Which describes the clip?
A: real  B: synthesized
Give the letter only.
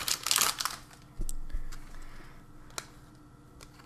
A